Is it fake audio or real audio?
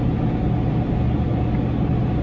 real